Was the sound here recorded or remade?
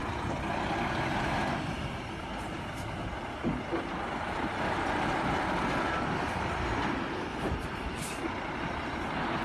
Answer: recorded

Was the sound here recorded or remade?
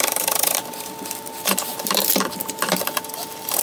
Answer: remade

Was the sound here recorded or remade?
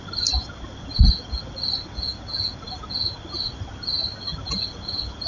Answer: recorded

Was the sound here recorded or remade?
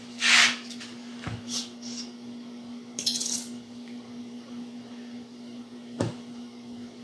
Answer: remade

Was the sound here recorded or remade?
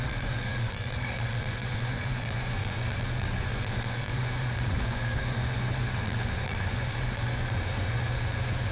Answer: remade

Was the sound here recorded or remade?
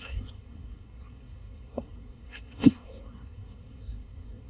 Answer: remade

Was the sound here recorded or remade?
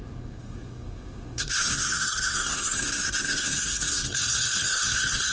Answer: remade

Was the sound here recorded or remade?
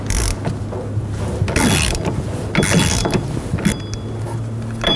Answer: recorded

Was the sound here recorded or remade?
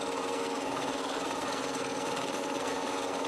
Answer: remade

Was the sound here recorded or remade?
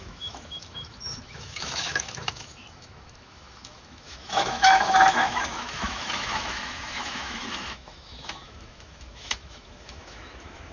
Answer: remade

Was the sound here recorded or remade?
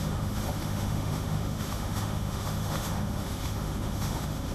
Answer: remade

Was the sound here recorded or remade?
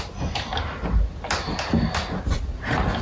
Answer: recorded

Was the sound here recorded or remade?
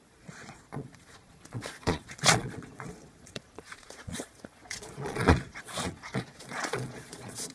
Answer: remade